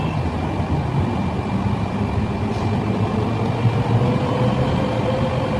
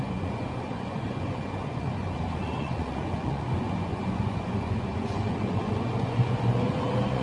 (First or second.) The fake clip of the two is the second